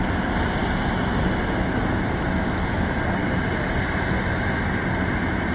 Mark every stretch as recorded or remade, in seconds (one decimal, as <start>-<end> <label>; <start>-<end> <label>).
0.0-5.5 recorded